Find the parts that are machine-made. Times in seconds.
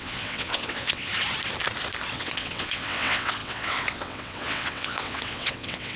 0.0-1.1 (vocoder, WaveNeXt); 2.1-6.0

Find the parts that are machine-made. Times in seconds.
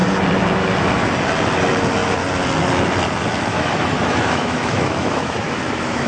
3.5-6.1 (autoencoder, DAC-VAE)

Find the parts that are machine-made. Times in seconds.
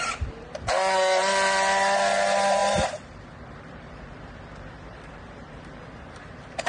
2.6-6.7 (vocoder, BigVGAN v2)